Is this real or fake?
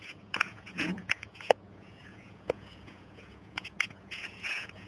fake